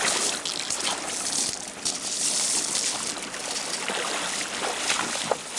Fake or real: real